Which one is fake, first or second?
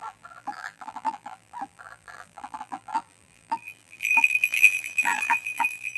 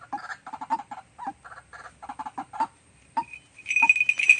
first